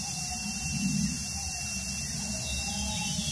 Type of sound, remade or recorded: recorded